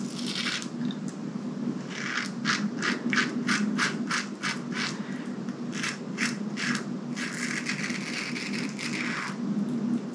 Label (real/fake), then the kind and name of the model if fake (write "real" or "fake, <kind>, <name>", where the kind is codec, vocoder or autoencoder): real